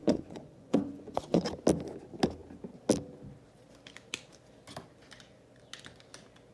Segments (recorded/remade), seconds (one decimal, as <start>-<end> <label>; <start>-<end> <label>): 0.0-1.4 remade; 1.4-6.5 recorded